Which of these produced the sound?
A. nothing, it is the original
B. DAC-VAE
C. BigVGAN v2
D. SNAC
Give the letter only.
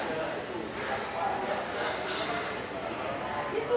A